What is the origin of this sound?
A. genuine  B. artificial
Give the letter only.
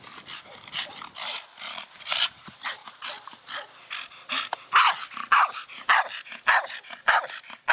A